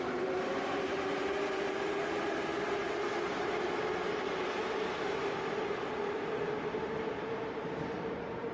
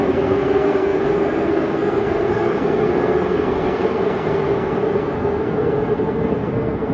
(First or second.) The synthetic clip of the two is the second